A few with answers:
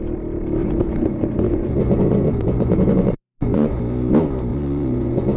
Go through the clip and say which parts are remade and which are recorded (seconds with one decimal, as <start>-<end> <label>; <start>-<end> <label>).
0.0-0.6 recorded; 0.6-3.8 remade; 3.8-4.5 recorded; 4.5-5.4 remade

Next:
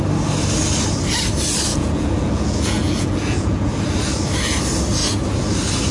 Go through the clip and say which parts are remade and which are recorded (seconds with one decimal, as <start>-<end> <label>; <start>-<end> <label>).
0.0-1.7 recorded; 1.7-3.7 remade; 3.7-5.9 recorded

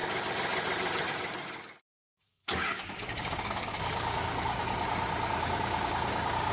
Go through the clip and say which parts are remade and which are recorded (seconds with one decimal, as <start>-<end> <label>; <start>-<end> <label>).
0.0-1.1 recorded; 1.1-4.6 remade; 4.6-5.4 recorded; 5.4-6.5 remade

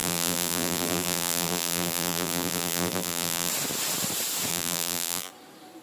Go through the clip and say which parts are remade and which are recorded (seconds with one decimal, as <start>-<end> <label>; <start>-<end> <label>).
0.0-3.5 remade; 3.5-4.5 recorded; 4.5-5.3 remade; 5.3-5.8 recorded

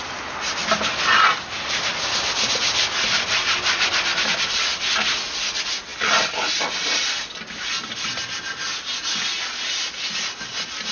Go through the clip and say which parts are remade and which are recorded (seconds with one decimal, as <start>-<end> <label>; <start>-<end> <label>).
0.0-10.9 recorded